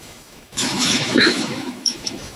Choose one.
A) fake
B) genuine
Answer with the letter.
A